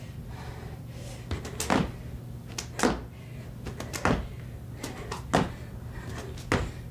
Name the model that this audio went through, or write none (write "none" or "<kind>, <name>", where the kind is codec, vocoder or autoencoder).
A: none